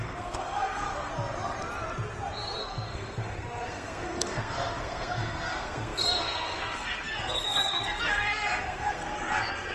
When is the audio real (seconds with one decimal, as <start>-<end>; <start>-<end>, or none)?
1.1-2.6